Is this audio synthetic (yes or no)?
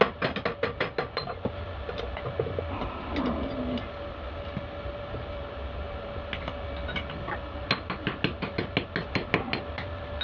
no